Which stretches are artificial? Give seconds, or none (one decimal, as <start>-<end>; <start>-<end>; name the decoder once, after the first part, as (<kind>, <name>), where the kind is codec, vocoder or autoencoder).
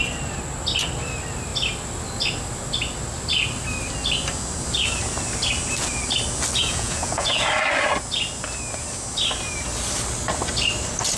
6.6-7.5 (vocoder, Vocos)